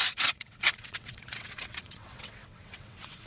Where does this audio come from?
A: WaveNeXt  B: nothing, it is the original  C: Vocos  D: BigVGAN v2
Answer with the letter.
A